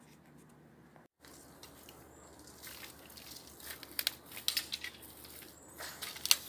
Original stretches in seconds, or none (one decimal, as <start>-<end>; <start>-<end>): 0.0-6.5